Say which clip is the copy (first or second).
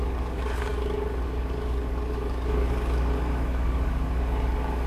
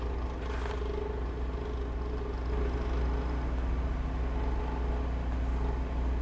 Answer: first